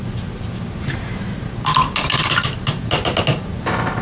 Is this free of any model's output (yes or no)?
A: yes